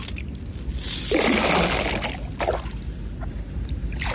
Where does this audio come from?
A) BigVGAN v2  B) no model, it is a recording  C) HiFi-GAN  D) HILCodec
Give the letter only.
B